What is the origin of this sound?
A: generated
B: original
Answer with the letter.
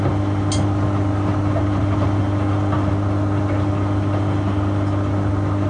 B